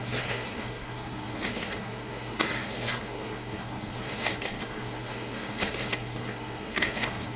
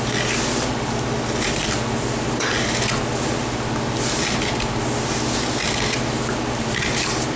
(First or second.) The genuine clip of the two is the second